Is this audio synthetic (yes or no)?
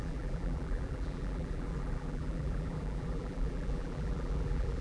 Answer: yes